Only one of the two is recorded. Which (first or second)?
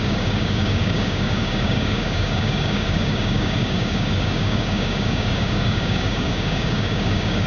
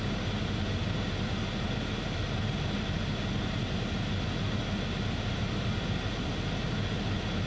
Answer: second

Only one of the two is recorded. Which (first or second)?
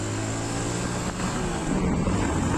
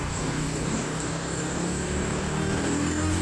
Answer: first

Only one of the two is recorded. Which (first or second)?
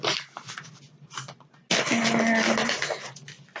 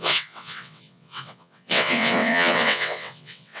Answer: first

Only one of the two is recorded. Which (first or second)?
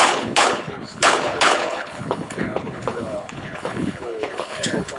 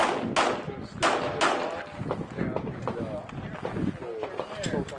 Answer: second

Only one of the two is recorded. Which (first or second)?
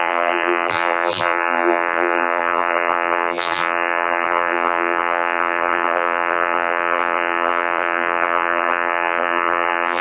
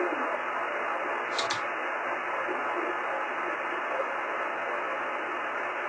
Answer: second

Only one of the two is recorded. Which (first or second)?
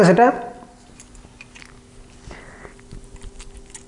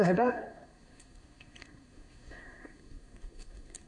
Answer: first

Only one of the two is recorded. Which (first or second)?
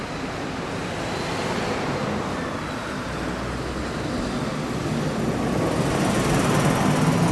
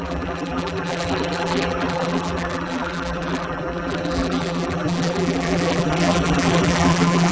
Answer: first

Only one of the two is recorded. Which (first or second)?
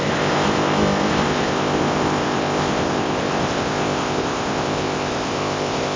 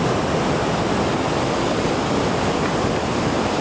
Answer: second